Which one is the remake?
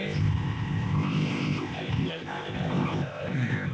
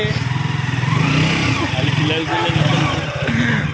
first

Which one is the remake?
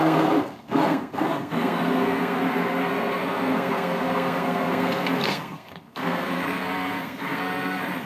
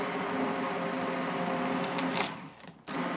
first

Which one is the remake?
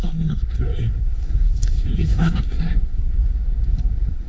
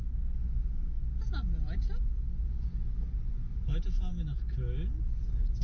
first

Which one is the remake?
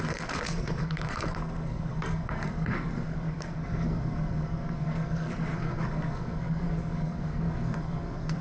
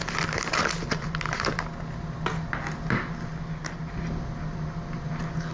first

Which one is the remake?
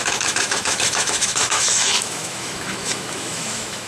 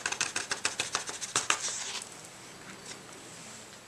first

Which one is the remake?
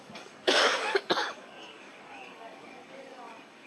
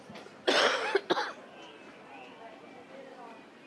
first